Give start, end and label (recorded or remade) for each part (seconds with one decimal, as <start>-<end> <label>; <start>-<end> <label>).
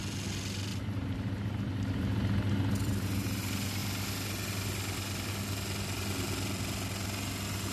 0.0-0.7 recorded; 0.7-3.4 remade; 3.4-7.7 recorded